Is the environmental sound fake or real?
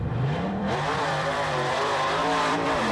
fake